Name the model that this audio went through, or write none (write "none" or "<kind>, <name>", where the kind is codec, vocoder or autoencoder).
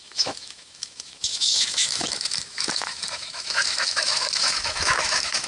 autoencoder, DAC-VAE